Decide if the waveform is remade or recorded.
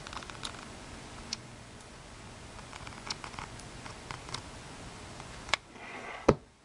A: remade